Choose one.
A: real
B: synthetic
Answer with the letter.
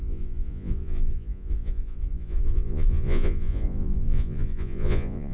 B